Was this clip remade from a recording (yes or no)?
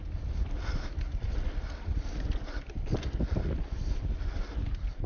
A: no